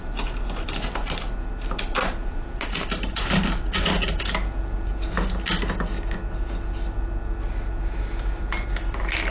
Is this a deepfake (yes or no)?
no